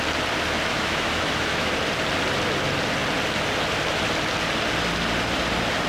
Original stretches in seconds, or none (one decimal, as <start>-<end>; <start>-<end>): 0.0-0.7; 1.7-5.9